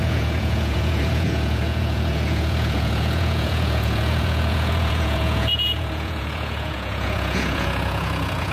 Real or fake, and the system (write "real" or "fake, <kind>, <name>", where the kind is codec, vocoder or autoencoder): fake, vocoder, Vocos